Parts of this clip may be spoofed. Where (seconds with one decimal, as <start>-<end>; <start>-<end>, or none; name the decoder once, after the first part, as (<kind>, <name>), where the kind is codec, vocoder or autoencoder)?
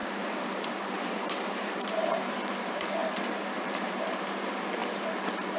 0.0-3.0 (vocoder, BigVGAN v2); 3.6-5.6